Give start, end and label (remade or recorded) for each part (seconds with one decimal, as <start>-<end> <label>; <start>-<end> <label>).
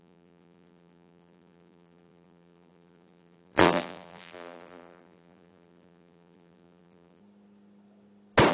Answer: 0.0-7.2 remade; 7.2-8.5 recorded